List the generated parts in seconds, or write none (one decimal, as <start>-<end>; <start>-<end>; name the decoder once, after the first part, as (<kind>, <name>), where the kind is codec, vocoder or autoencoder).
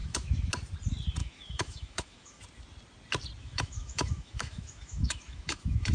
0.0-0.5 (autoencoder, DAC-VAE); 1.2-2.4; 3.4-5.9